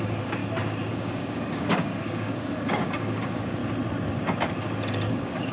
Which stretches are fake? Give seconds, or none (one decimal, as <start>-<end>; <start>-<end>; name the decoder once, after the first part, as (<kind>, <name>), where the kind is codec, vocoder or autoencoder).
0.0-0.4 (codec, DAC); 0.9-3.6; 5.1-5.5